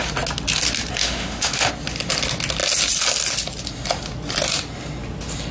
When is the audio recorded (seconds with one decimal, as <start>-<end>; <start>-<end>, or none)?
0.0-1.0; 1.7-5.5